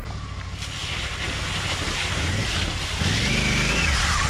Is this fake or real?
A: real